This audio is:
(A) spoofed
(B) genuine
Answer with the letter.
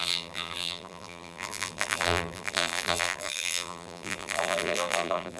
A